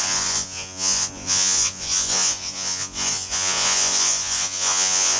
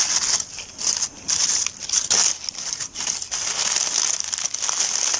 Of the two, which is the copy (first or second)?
first